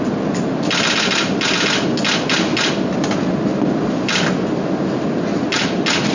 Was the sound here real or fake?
real